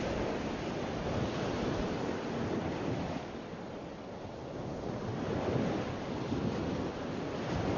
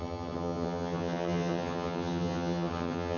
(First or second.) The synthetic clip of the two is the second